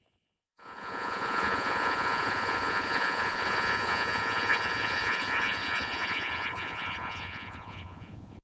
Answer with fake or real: fake